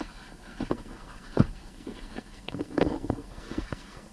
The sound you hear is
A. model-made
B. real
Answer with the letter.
A